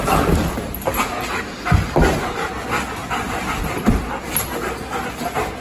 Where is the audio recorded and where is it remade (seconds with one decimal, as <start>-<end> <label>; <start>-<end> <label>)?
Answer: 0.0-5.6 recorded